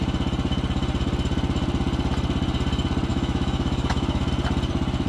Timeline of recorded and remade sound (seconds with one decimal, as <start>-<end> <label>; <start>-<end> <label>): 0.0-3.1 recorded; 3.1-4.3 remade; 4.3-5.1 recorded

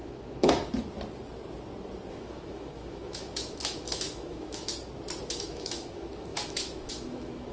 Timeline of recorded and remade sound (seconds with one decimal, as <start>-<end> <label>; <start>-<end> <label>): 0.0-0.6 remade; 0.6-2.1 recorded; 2.1-4.7 remade; 4.7-5.3 recorded; 5.3-7.5 remade

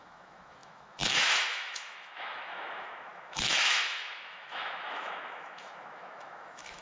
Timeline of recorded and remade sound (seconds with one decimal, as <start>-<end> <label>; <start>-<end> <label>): 0.0-6.8 remade

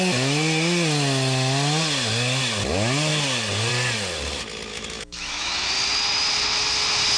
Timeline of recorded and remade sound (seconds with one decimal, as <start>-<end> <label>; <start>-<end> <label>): 0.0-4.7 recorded; 4.7-5.7 remade; 5.7-7.2 recorded